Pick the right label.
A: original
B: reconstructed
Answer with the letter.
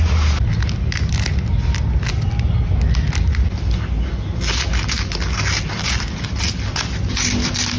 A